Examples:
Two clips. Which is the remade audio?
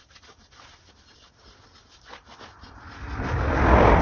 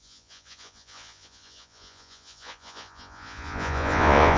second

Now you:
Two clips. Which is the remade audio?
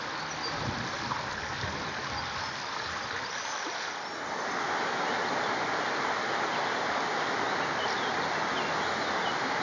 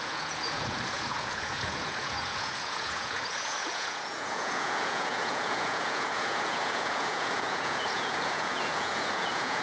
second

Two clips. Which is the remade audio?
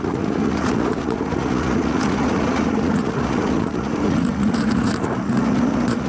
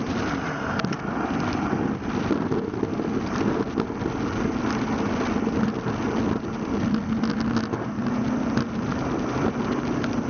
first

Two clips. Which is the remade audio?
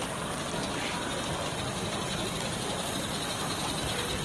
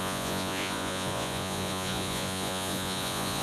second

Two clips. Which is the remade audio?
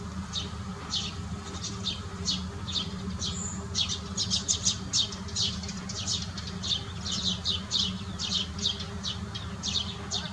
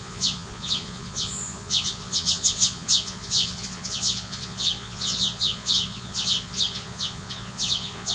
second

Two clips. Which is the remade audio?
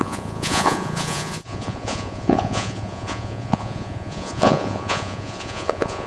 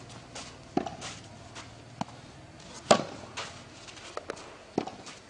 first